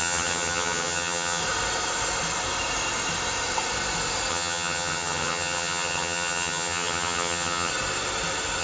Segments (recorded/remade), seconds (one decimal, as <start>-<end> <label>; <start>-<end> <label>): 0.0-1.4 remade; 1.4-4.3 recorded; 4.3-7.7 remade; 7.7-8.6 recorded